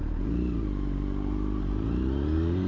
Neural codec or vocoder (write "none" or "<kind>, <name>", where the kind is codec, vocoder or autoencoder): vocoder, BigVGAN v2